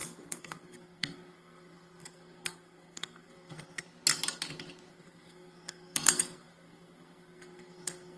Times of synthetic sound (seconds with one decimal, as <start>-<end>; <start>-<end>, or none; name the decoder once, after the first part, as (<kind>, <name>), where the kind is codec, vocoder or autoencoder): 0.0-3.8 (codec, SNAC); 4.9-8.2